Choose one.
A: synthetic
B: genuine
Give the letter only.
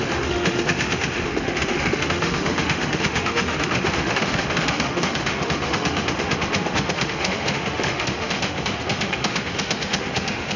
A